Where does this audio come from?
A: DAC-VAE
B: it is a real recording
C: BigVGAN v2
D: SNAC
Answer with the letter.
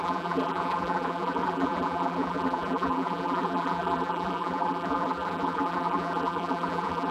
C